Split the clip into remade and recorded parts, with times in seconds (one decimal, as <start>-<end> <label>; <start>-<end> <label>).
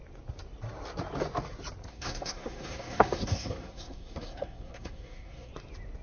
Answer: 0.0-1.9 recorded; 1.9-5.5 remade; 5.5-6.0 recorded